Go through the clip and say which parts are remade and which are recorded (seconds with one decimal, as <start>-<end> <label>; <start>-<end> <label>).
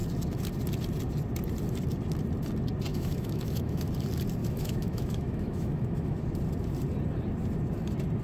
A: 0.0-2.9 recorded; 2.9-3.9 remade; 3.9-4.4 recorded; 4.4-6.3 remade; 6.3-8.2 recorded